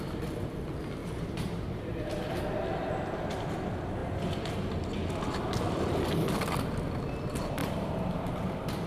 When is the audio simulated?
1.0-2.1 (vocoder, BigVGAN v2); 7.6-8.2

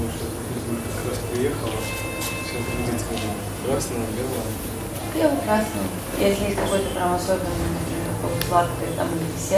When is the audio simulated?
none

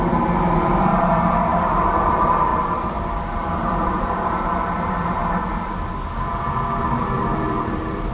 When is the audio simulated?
0.0-5.2 (vocoder, BigVGAN v2); 6.8-8.1

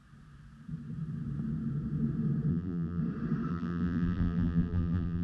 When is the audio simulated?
2.5-3.0 (vocoder, BigVGAN v2); 3.5-5.2

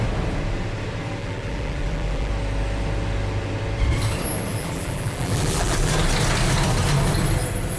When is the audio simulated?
1.2-2.3 (vocoder, BigVGAN v2); 4.5-5.9

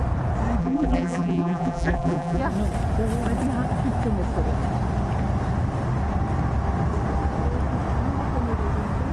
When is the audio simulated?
0.6-2.4 (vocoder, BigVGAN v2)

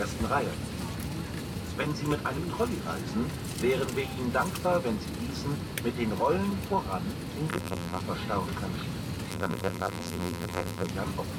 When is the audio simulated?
7.5-8.0 (vocoder, BigVGAN v2); 9.3-10.9

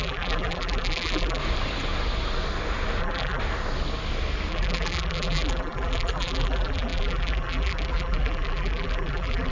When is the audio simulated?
0.0-1.4 (vocoder, BigVGAN v2); 3.0-3.4; 4.5-9.5